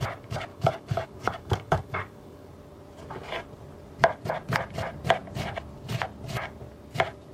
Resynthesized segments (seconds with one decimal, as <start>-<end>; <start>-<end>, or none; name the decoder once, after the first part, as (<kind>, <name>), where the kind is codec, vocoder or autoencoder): 0.5-2.5 (codec, DAC)